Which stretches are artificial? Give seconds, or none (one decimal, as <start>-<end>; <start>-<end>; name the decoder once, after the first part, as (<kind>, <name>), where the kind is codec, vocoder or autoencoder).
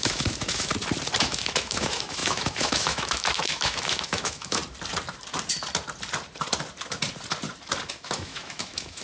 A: 0.0-0.7 (autoencoder, DAC-VAE); 1.2-4.6; 7.9-9.0